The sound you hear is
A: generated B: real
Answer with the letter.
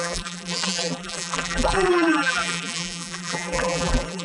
A